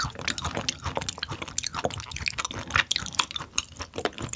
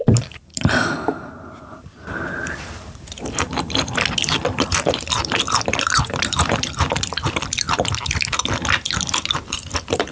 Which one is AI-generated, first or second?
second